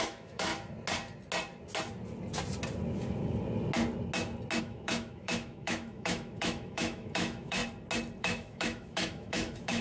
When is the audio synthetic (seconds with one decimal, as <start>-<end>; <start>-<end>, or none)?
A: 0.0-0.5; 4.6-7.6; 8.2-9.8